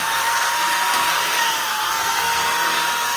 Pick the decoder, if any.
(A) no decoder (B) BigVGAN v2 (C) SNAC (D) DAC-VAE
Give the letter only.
C